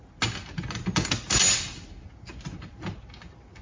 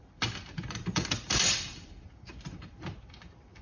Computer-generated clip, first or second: second